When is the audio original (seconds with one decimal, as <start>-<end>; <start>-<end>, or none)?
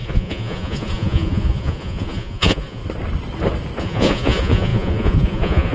2.8-3.8